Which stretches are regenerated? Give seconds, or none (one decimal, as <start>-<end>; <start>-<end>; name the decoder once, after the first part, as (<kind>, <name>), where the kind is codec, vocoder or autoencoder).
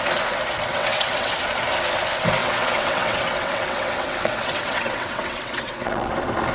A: 0.7-1.3 (vocoder, WaveNeXt); 2.4-6.1